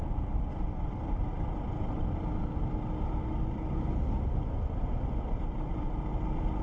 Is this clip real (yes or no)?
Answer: yes